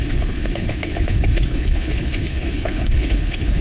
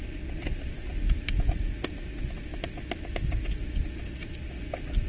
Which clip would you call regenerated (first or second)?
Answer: first